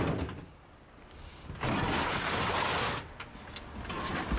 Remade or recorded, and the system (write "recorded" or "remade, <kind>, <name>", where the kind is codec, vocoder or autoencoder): recorded